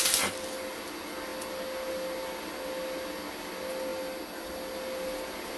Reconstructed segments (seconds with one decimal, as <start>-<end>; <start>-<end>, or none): none